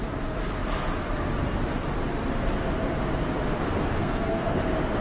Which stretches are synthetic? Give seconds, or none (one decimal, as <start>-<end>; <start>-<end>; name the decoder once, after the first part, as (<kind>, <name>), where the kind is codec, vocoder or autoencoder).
4.0-4.6 (codec, SNAC)